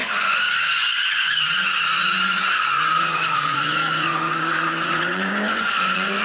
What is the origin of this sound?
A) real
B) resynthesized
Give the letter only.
B